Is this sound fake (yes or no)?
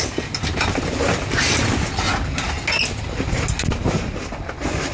no